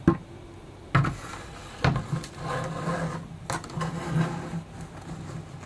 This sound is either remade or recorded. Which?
recorded